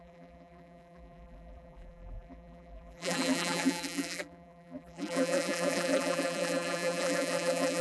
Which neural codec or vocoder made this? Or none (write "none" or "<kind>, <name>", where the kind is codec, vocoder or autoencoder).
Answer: vocoder, BigVGAN v2